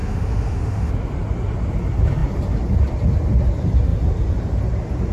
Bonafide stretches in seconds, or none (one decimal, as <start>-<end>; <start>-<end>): 0.9-5.1